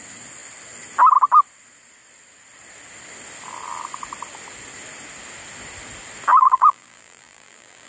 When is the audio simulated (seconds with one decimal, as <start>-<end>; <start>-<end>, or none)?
6.3-7.9